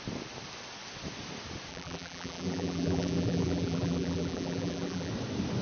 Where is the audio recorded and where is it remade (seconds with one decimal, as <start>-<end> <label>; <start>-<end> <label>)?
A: 0.0-1.7 recorded; 1.7-5.1 remade; 5.1-5.6 recorded